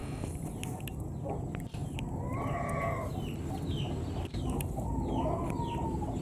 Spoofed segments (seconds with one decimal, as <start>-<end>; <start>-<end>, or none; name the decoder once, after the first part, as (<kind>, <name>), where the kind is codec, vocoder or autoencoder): none